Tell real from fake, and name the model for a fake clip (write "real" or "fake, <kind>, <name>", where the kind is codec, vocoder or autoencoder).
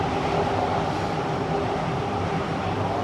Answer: real